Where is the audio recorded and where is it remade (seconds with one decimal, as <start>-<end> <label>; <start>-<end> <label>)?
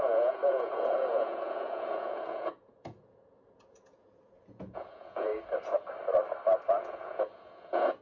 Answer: 0.0-5.3 remade; 5.3-6.8 recorded; 6.8-8.0 remade